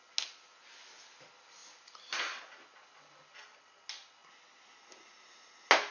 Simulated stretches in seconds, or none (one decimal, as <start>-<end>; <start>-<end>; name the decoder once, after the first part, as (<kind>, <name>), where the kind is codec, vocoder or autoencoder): none